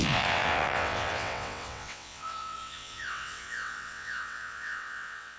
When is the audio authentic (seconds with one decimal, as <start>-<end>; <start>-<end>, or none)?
none